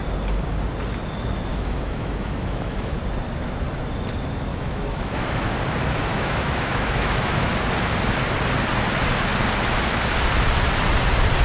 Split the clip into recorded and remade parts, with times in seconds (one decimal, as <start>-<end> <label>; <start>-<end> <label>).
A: 0.0-1.5 recorded; 1.5-3.0 remade; 3.0-4.5 recorded; 4.5-5.5 remade; 5.5-6.1 recorded; 6.1-7.5 remade; 7.5-11.4 recorded